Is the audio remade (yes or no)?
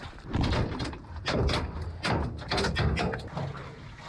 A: no